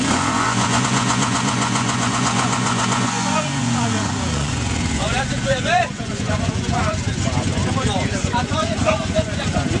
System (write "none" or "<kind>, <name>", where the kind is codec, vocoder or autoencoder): vocoder, Vocos